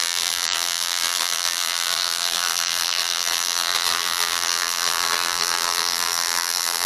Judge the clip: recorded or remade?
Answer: remade